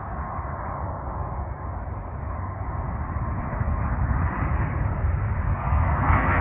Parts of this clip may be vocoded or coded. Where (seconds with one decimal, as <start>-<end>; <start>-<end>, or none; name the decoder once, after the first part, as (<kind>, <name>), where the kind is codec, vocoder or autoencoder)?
5.5-6.4 (codec, SNAC)